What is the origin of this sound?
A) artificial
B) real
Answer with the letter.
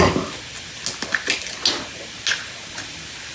B